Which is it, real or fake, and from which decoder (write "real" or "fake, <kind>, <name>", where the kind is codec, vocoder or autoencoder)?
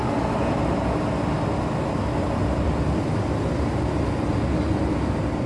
real